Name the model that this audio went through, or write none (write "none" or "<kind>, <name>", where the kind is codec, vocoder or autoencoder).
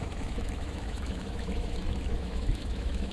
autoencoder, DAC-VAE